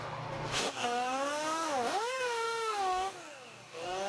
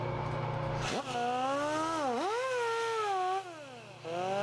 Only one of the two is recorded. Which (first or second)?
second